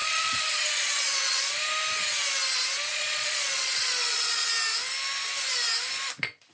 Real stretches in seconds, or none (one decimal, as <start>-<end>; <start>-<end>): 1.5-2.9; 4.5-6.5